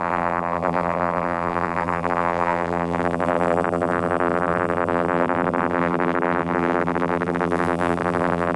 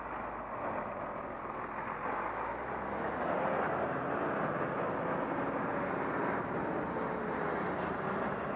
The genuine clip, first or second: second